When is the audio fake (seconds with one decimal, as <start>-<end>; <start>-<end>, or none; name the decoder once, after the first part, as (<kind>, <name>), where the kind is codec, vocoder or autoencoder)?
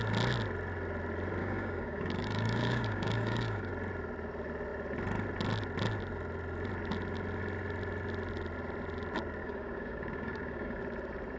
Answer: 1.4-3.7 (codec, DAC); 9.4-10.8